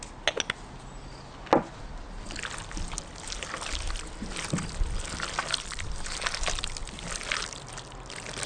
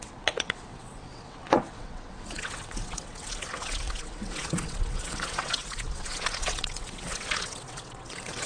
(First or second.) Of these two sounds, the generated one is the second